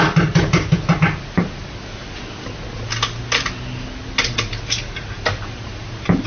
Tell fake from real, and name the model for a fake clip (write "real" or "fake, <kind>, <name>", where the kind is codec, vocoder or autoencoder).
real